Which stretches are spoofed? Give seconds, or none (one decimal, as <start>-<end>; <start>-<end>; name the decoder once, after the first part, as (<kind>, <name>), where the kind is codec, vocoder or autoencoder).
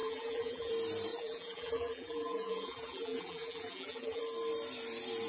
0.0-0.7 (vocoder, BigVGAN v2); 1.1-4.2